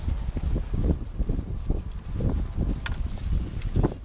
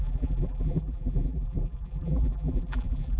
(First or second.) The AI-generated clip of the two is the second